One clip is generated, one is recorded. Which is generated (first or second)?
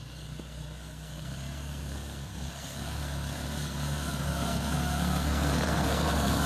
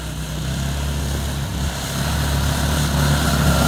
first